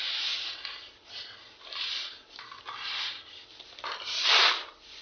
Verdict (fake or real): real